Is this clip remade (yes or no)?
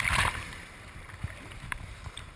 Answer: yes